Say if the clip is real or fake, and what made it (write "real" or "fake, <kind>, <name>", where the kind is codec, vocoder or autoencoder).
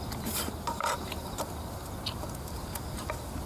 real